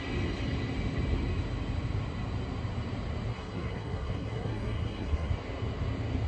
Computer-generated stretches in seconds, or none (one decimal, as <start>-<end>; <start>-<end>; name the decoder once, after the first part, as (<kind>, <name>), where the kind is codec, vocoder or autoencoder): 3.3-5.3 (codec, SNAC)